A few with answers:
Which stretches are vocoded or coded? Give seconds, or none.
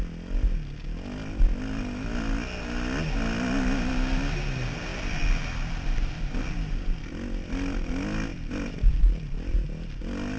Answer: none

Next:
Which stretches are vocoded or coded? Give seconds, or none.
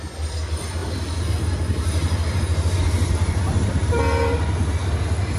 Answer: 0.8-4.0 (vocoder, BigVGAN v2)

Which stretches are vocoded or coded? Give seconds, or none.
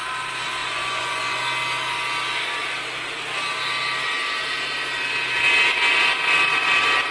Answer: 0.6-1.4 (vocoder, Vocos)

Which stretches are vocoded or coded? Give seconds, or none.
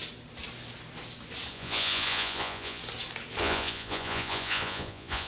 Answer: 1.5-2.8 (vocoder, Vocos); 3.4-5.3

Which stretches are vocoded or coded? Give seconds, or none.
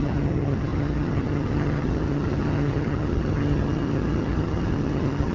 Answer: 0.0-5.3 (vocoder, HiFi-GAN)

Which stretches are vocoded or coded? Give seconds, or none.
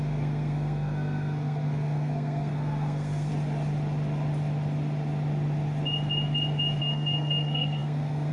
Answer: 0.0-3.3 (codec, SNAC); 6.8-8.3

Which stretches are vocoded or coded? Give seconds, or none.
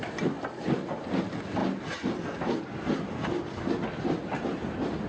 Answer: none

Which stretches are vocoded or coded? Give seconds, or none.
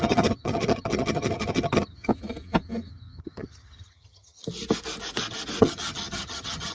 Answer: 0.0-2.1 (vocoder, HiFi-GAN); 2.9-4.4; 5.6-6.7